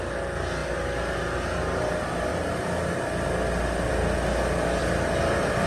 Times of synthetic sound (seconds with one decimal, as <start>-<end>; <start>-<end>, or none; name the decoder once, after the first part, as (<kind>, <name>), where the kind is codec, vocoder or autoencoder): 2.3-3.9 (vocoder, BigVGAN v2); 4.8-5.7